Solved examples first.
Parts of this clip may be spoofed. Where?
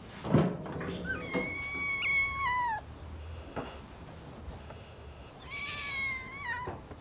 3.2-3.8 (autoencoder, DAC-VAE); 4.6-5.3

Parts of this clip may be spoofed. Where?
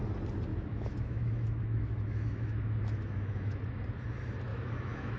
0.5-3.6 (autoencoder, DAC-VAE); 4.5-5.2